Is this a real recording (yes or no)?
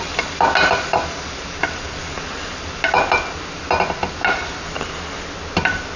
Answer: yes